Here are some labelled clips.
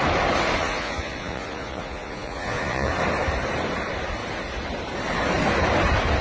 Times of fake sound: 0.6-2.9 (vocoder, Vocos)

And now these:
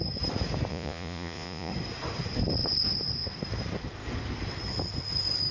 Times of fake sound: 0.7-1.7 (vocoder, Vocos)